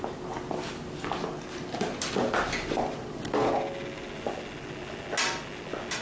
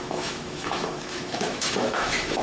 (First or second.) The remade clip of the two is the second